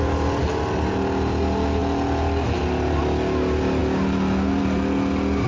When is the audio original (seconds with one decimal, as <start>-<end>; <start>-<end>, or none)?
0.0-5.5

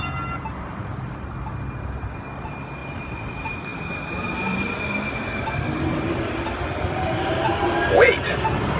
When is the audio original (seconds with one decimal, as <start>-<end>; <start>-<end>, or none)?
0.0-0.9; 1.5-2.8; 3.3-3.7; 7.1-8.8

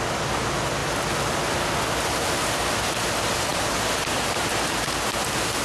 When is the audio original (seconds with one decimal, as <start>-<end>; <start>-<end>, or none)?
0.0-3.5; 4.4-5.6

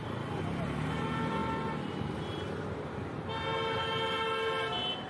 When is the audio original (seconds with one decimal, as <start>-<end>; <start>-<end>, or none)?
0.0-5.1

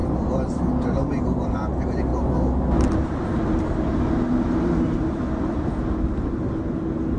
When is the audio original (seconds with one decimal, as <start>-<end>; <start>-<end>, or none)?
0.0-7.2

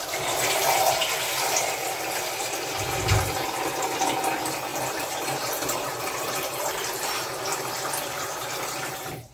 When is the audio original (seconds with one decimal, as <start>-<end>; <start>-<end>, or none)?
1.0-4.3; 7.5-8.1

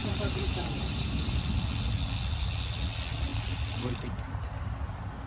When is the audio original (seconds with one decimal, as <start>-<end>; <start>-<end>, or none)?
1.4-5.3